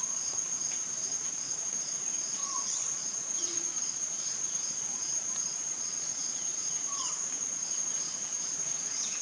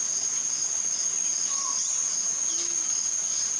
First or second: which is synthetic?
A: first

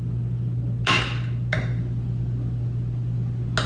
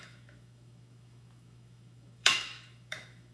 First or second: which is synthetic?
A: second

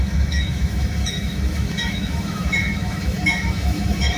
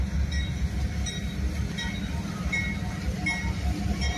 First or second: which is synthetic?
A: first